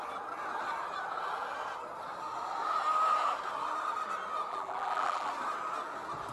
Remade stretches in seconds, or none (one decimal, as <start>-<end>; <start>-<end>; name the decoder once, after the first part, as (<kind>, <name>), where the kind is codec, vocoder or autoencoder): 4.5-5.3 (vocoder, BigVGAN v2)